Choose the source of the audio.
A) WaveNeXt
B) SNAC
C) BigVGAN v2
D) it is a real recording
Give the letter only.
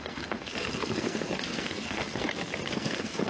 B